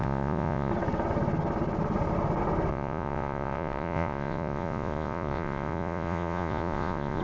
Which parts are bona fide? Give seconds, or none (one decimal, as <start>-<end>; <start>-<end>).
0.7-2.7

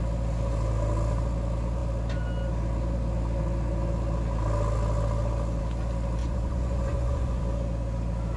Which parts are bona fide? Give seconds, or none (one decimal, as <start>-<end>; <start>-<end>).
0.0-6.2; 7.4-8.4